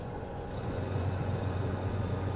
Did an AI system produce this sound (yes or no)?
yes